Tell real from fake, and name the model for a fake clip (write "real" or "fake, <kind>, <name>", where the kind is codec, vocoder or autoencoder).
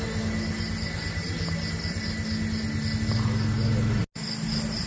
real